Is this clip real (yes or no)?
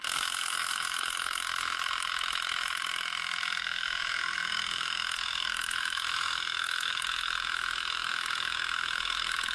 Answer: no